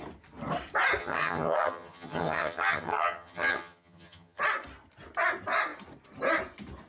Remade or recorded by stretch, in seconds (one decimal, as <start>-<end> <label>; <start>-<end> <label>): 0.0-1.0 recorded; 1.0-4.4 remade; 4.4-6.9 recorded